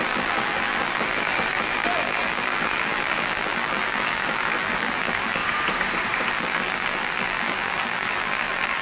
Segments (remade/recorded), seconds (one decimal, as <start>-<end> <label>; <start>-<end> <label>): 0.0-5.4 remade; 5.4-6.3 recorded; 6.3-8.8 remade